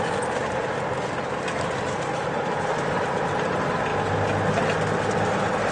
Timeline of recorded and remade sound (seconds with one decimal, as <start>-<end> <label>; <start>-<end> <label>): 0.0-5.7 recorded